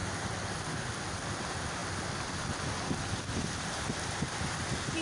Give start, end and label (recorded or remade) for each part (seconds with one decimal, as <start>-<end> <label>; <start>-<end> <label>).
0.0-5.0 recorded